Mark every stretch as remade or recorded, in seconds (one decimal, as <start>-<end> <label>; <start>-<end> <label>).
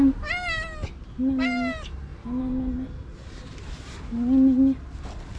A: 0.0-5.4 recorded